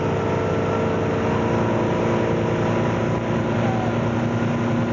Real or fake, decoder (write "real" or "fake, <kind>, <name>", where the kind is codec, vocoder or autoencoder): real